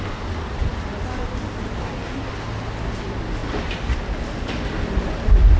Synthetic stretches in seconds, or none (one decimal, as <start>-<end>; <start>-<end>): 1.8-2.3